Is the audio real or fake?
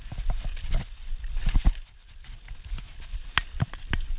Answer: real